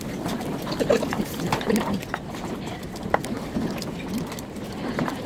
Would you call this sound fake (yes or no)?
no